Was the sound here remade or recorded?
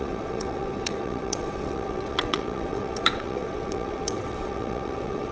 remade